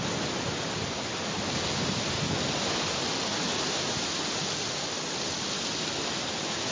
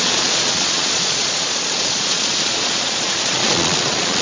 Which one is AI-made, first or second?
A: second